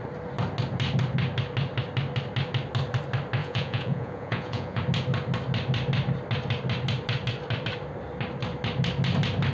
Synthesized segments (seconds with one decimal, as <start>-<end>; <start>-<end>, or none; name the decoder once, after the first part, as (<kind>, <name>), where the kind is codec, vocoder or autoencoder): 3.4-4.8 (vocoder, Vocos)